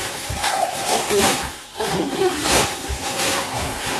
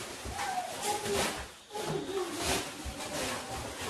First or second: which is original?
second